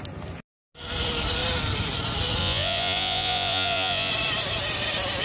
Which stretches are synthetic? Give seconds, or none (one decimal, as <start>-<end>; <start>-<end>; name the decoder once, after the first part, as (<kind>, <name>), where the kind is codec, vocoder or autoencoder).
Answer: 2.4-4.1 (vocoder, Vocos)